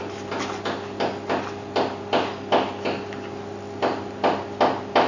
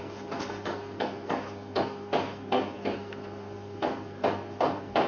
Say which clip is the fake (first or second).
second